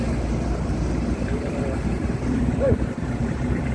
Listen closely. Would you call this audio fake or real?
fake